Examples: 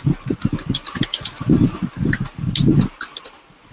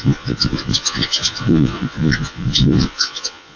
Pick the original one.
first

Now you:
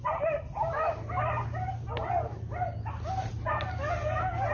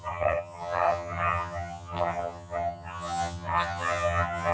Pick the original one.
first